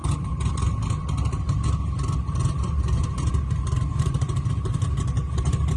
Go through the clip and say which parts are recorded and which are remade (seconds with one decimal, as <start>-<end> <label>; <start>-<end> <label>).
0.0-0.5 remade; 0.5-2.4 recorded; 2.4-5.8 remade